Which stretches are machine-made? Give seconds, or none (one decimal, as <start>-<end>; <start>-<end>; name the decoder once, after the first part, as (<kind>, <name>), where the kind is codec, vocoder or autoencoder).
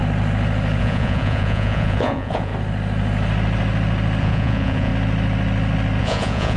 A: 0.8-2.5 (vocoder, Vocos); 4.2-4.9; 6.0-6.6